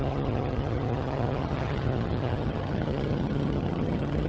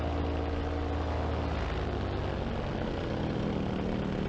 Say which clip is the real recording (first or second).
second